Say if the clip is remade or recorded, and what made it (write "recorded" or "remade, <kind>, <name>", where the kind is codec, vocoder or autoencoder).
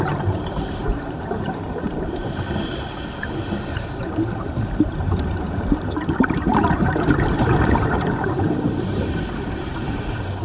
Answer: remade, vocoder, BigVGAN v2